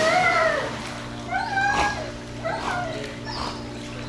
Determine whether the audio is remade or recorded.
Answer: recorded